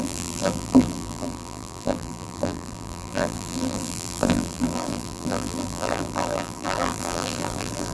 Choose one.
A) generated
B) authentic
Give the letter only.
A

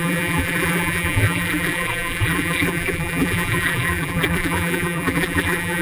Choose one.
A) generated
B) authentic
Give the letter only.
A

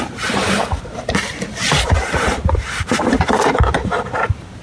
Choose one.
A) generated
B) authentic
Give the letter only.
A